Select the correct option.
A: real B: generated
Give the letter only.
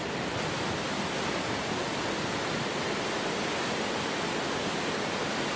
A